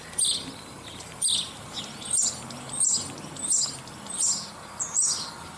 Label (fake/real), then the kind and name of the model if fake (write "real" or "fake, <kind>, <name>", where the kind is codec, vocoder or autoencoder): real